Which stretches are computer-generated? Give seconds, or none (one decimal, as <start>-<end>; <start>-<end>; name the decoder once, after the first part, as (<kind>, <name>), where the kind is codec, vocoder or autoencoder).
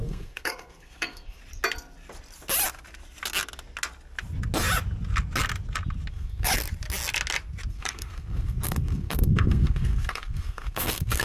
0.0-1.4 (codec, SNAC); 6.1-6.5; 7.7-11.2